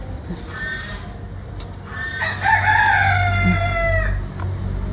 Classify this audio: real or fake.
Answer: real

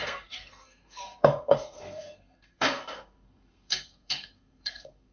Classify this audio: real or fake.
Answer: fake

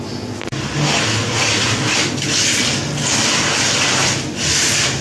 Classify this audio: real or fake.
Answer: real